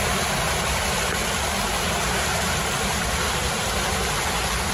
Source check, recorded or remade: recorded